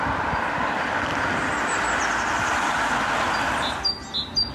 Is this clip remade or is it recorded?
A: recorded